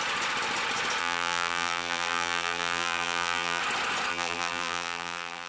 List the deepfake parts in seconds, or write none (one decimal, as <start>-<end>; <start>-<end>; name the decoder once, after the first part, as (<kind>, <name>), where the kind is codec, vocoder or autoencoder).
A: 1.0-3.6 (vocoder, BigVGAN v2); 4.1-5.5